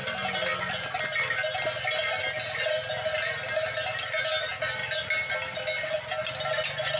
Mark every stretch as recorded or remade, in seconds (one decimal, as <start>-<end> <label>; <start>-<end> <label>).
0.0-7.0 recorded